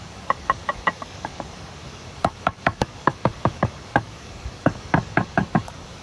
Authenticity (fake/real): fake